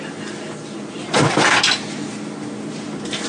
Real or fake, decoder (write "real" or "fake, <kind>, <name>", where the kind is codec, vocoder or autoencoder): real